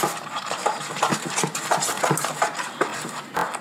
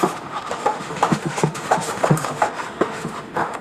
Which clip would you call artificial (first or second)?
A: second